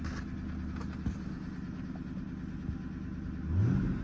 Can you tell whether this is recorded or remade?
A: recorded